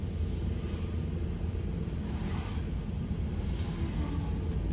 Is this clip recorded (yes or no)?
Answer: yes